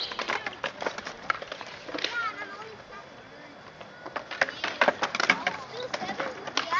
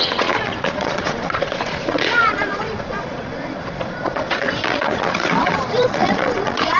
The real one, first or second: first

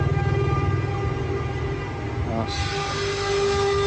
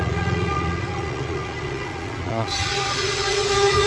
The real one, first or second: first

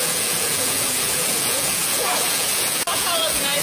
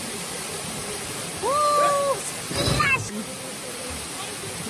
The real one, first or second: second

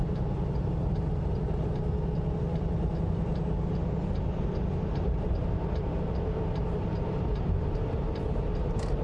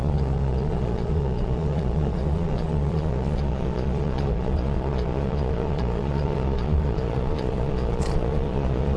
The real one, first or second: first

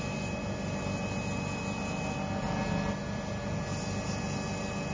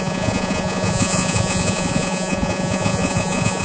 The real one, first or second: first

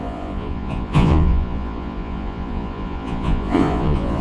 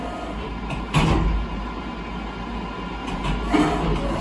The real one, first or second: second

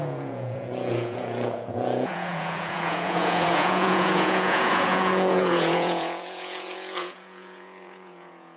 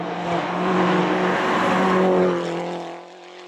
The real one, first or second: second